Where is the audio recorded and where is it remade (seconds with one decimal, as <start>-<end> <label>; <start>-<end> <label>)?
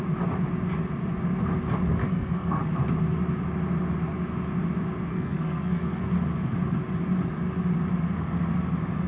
0.0-2.0 recorded; 2.0-2.7 remade; 2.7-5.1 recorded; 5.1-6.0 remade; 6.0-9.1 recorded